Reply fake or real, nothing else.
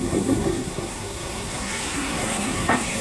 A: fake